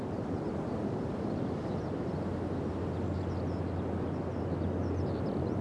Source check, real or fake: real